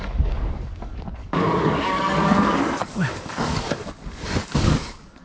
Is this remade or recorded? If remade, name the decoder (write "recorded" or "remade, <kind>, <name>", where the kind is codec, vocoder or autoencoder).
remade, codec, DAC